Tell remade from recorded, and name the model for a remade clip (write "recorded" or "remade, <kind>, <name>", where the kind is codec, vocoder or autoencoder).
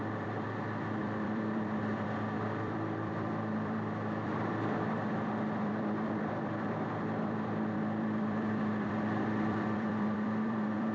remade, vocoder, BigVGAN v2